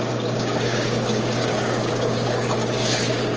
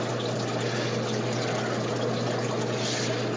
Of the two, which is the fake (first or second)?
first